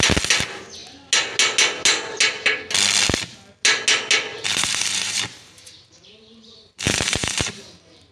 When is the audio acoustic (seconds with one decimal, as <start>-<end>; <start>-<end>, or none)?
0.0-4.3